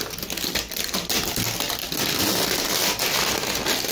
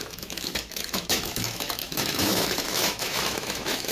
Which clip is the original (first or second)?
first